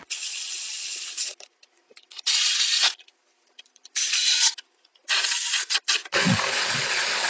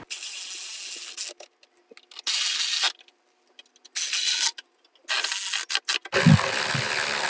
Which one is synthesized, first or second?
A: first